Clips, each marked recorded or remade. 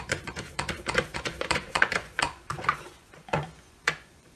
remade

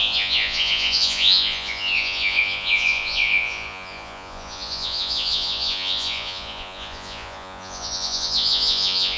remade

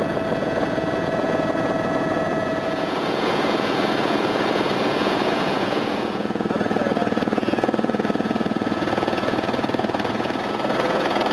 remade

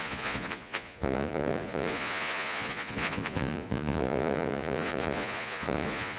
remade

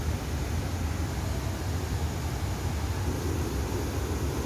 recorded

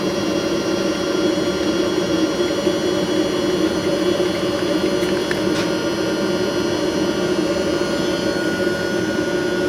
recorded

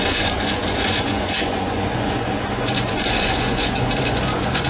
remade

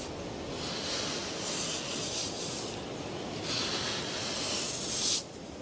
recorded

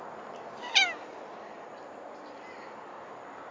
recorded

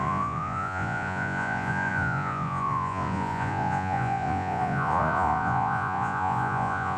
remade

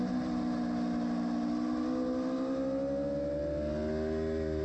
recorded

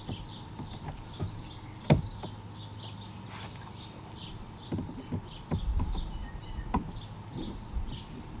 recorded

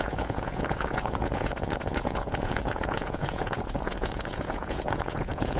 remade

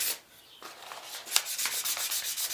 recorded